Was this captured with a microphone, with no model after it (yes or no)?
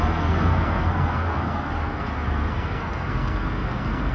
no